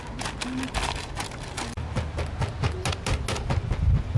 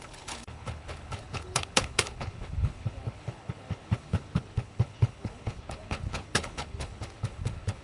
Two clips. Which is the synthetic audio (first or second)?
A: second